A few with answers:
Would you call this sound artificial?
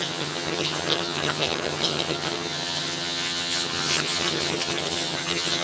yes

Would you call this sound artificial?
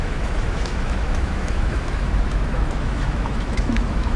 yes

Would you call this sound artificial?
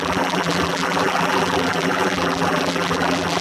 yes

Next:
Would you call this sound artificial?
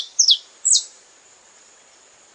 yes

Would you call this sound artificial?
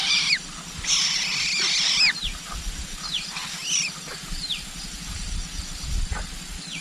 no